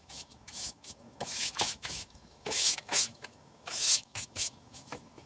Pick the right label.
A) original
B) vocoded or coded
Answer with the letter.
B